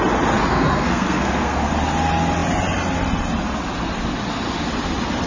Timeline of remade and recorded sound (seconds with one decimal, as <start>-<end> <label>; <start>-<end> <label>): 0.0-0.5 recorded; 0.5-1.7 remade; 1.7-5.3 recorded